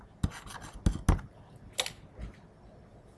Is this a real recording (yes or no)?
yes